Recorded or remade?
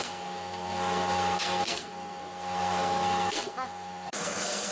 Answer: remade